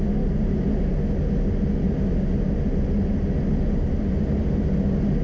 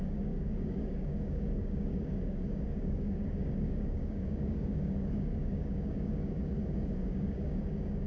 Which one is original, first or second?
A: first